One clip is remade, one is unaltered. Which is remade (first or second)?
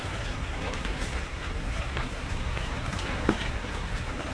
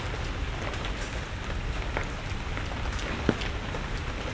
first